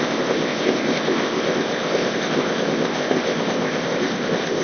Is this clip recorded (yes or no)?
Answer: no